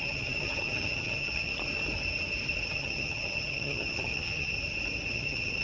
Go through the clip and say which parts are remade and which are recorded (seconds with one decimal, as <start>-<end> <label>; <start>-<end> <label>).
0.0-1.5 remade; 1.5-2.7 recorded; 2.7-4.5 remade; 4.5-5.1 recorded; 5.1-5.6 remade